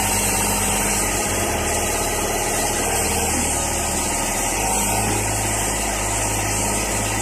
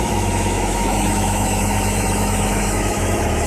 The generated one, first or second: second